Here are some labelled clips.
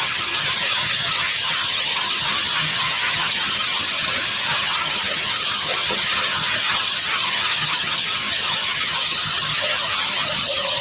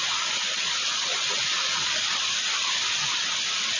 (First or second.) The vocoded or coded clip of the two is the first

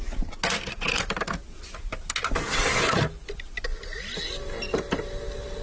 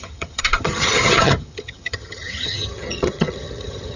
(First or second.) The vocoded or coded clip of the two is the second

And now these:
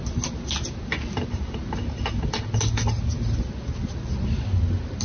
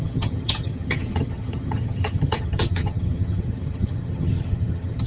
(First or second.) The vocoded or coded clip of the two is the second